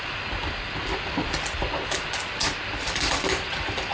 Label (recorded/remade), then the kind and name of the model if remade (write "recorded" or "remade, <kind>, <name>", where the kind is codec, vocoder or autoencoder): recorded